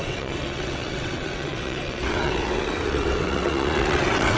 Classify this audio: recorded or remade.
remade